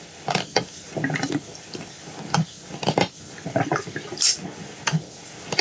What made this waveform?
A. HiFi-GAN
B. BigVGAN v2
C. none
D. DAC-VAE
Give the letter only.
B